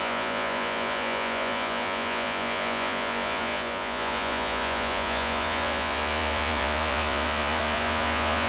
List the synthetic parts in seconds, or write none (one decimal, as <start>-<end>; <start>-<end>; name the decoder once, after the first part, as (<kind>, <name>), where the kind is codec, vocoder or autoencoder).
0.0-8.5 (vocoder, Vocos)